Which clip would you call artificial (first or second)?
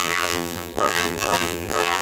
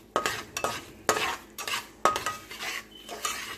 first